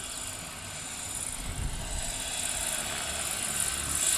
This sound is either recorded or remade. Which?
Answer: recorded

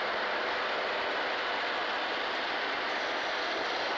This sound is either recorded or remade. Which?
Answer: recorded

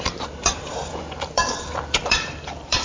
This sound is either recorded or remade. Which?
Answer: remade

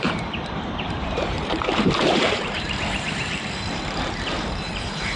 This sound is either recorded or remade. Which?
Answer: remade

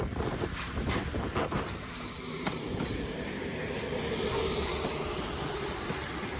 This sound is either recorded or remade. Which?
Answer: remade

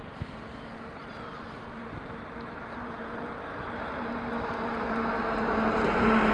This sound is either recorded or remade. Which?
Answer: remade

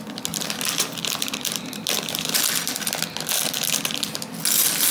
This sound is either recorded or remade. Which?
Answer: recorded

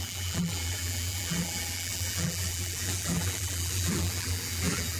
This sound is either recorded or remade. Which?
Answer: remade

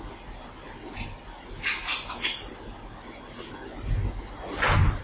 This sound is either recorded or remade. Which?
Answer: recorded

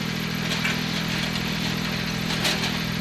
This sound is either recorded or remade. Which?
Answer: recorded